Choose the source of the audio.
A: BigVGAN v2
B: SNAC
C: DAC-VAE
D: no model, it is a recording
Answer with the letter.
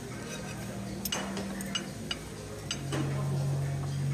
D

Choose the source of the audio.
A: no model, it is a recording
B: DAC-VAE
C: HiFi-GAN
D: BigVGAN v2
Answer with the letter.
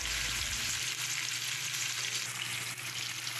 A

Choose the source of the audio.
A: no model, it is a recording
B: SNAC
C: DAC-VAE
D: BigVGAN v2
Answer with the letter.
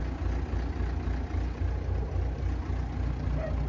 A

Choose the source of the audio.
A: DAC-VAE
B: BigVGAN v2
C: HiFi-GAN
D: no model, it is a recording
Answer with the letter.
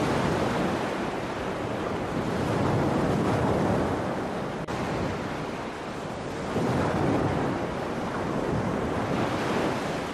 D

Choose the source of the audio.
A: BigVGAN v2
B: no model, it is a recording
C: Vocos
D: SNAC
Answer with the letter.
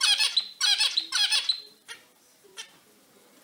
A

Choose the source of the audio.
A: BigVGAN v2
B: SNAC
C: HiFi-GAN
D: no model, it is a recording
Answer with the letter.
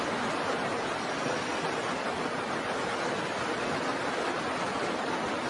D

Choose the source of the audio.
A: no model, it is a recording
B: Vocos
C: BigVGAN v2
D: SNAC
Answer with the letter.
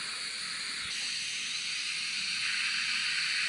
A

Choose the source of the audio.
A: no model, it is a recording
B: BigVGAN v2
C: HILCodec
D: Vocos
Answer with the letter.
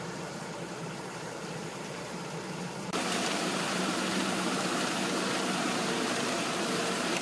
B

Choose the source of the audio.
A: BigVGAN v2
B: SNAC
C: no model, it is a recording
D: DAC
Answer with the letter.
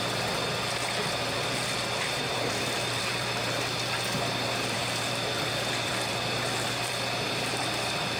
A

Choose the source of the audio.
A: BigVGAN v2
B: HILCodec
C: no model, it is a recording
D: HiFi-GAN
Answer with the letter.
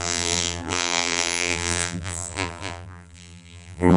A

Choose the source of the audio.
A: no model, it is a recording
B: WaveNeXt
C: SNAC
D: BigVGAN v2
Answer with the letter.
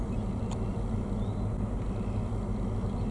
A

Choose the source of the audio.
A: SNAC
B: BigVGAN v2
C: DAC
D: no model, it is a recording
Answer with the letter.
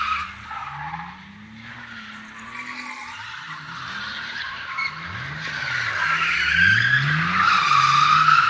B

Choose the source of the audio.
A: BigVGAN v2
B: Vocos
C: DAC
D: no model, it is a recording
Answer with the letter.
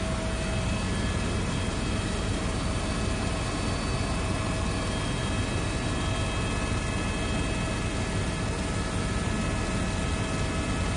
D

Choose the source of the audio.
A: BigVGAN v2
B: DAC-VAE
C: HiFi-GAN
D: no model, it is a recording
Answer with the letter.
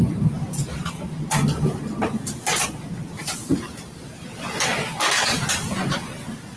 A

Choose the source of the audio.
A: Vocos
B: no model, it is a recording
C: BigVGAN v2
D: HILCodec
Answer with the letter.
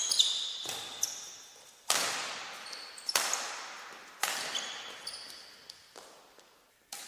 B